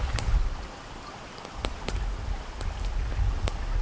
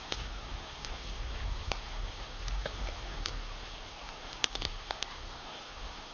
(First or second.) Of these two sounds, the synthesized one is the second